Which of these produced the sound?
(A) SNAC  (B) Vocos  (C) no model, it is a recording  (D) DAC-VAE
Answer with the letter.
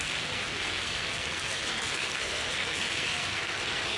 A